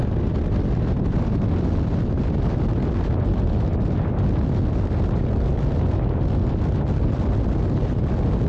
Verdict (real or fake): real